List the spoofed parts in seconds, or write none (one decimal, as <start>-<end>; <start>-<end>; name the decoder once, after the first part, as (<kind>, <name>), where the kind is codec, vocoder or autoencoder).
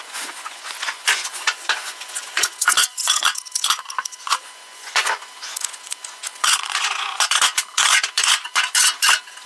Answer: 0.0-9.5 (vocoder, Vocos)